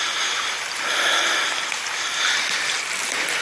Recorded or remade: recorded